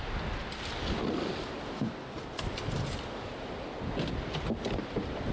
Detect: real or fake real